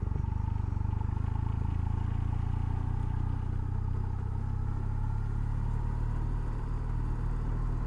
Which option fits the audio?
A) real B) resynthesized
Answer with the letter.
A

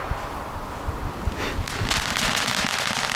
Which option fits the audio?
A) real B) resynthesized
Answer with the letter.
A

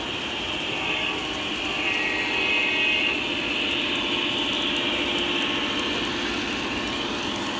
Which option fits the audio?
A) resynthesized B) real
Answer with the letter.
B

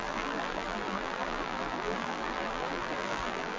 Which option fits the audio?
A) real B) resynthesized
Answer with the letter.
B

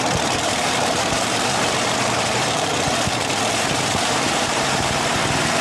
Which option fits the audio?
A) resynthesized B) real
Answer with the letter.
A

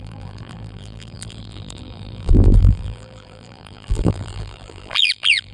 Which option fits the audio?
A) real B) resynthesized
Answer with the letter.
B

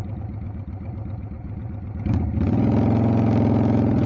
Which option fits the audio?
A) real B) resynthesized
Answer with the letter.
B